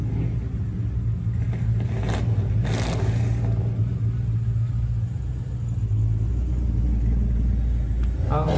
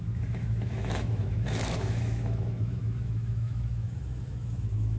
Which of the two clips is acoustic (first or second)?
first